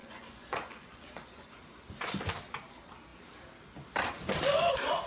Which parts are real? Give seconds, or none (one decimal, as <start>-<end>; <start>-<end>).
1.6-5.1